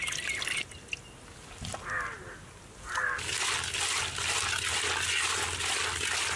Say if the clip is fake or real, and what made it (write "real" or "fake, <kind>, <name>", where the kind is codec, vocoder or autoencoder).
real